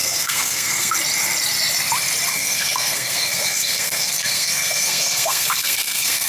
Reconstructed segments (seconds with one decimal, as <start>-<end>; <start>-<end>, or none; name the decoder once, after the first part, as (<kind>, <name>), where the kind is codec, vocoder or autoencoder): 0.0-0.9 (codec, SNAC); 2.3-6.3